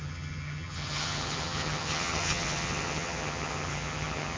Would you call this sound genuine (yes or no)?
no